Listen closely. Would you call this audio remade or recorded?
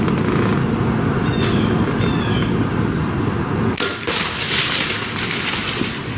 recorded